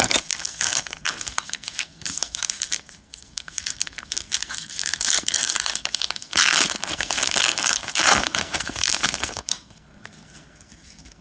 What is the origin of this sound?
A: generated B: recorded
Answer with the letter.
A